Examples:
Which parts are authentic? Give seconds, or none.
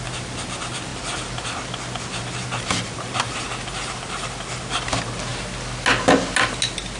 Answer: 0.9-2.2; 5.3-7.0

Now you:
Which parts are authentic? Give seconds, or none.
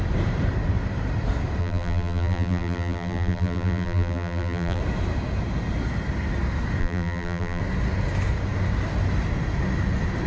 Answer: 0.0-1.6; 4.8-6.8; 7.6-10.3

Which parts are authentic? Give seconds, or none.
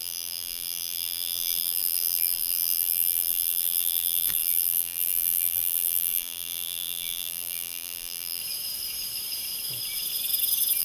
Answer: 8.4-10.8